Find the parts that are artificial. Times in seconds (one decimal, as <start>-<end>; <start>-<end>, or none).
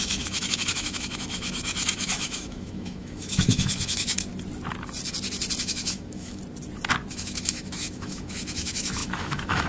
0.0-4.3; 5.6-6.4; 7.1-9.7